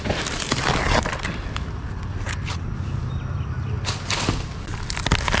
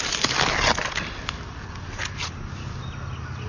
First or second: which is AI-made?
first